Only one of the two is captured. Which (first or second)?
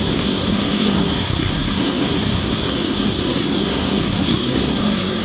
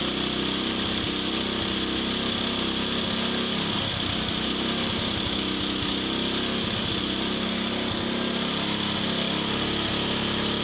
second